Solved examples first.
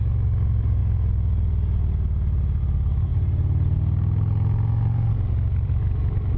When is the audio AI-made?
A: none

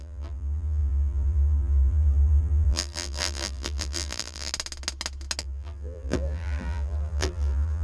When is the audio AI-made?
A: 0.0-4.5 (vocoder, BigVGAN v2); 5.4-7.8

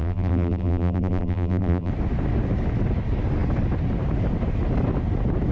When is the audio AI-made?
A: 0.0-1.9 (vocoder, BigVGAN v2)